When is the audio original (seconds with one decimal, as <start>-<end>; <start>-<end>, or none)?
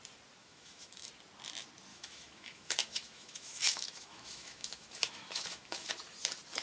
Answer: 0.0-0.4; 1.1-1.9; 5.9-6.6